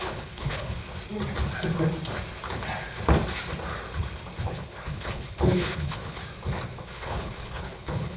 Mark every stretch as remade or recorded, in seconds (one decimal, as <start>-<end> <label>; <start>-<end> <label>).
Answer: 0.0-0.8 remade; 0.8-4.4 recorded; 4.4-6.2 remade; 6.2-6.8 recorded; 6.8-8.2 remade